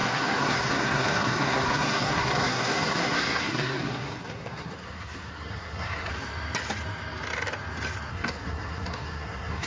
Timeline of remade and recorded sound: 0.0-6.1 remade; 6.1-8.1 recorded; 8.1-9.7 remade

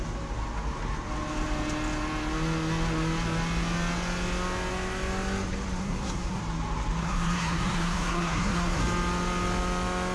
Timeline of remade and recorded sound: 0.0-5.8 recorded; 5.8-6.4 remade; 6.4-7.0 recorded; 7.0-8.8 remade; 8.8-10.1 recorded

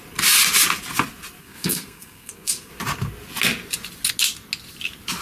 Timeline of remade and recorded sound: 0.0-1.4 recorded; 1.4-2.7 remade; 2.7-5.2 recorded

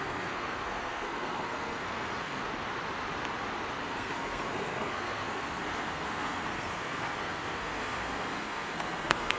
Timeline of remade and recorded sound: 0.0-2.4 remade; 2.4-3.8 recorded; 3.8-9.4 remade

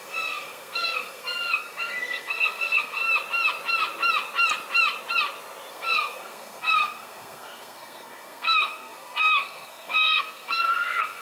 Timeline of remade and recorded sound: 0.0-3.0 remade; 3.0-5.7 recorded; 5.7-11.2 remade

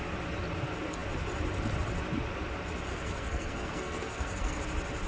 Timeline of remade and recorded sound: 0.0-2.9 recorded; 2.9-4.6 remade; 4.6-5.1 recorded

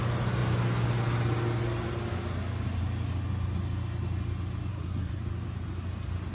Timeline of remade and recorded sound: 0.0-4.7 recorded; 4.7-5.2 remade; 5.2-6.3 recorded

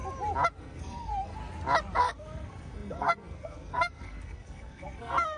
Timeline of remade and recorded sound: 0.0-0.6 recorded; 0.6-1.4 remade; 1.4-2.0 recorded; 2.0-5.4 remade